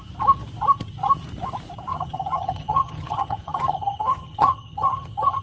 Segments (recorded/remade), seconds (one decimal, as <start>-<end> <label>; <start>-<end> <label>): 0.0-1.9 recorded; 1.9-5.4 remade